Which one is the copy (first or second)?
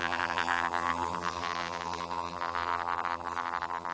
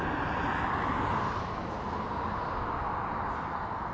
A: first